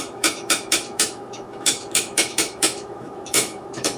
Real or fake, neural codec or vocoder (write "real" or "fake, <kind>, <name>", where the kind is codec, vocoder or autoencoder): fake, autoencoder, DAC-VAE